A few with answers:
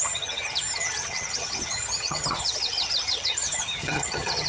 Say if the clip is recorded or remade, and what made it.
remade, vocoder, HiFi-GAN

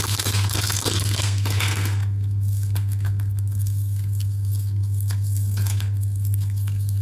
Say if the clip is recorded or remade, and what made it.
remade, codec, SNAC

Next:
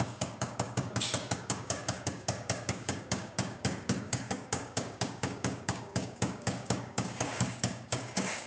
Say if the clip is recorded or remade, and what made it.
remade, codec, DAC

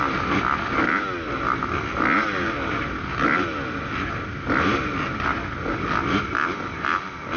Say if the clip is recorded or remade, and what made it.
recorded